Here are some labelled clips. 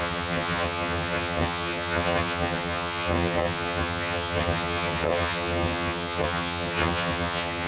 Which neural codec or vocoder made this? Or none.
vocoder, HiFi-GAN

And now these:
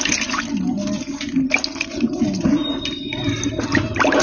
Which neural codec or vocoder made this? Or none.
none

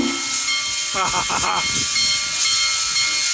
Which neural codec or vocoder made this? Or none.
none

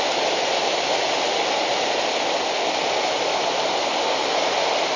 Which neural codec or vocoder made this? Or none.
none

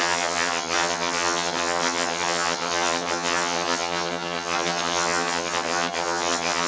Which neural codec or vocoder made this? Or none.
vocoder, HiFi-GAN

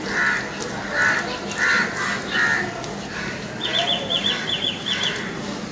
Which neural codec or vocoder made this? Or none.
none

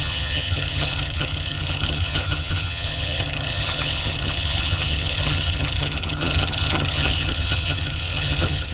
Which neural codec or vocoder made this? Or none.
vocoder, HiFi-GAN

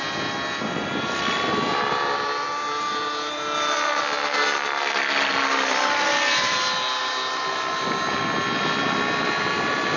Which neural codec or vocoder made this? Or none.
none